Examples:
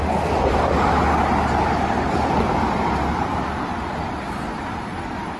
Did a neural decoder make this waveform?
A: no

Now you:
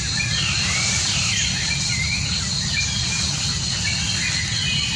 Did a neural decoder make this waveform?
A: no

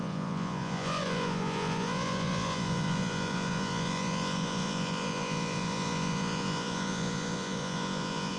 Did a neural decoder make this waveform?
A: yes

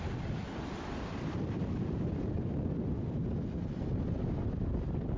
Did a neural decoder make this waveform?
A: no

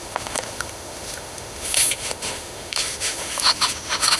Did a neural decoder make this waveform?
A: yes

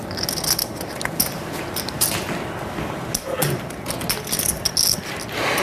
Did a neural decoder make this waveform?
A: no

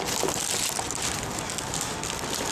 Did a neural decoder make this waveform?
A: no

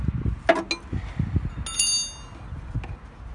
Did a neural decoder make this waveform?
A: no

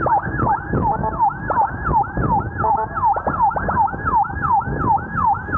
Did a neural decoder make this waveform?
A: no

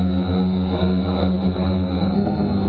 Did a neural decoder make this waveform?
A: yes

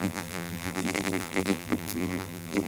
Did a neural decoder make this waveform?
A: yes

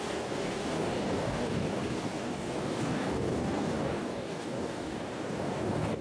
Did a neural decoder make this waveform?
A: yes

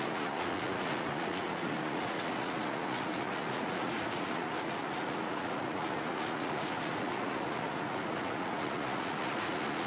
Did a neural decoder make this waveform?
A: yes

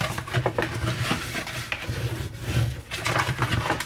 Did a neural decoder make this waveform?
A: no